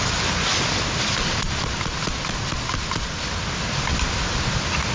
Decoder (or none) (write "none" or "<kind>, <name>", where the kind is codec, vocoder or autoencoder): none